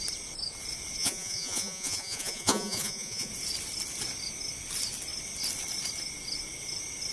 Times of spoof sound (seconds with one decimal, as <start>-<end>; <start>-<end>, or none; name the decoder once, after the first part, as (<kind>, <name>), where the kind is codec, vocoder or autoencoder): 1.0-3.3 (vocoder, Vocos)